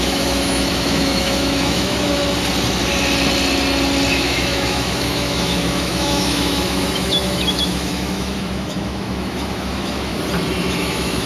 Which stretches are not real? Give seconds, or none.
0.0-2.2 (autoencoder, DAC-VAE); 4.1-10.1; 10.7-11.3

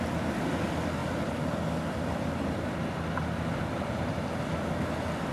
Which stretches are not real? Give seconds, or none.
none